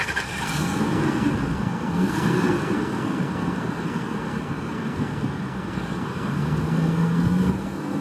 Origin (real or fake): fake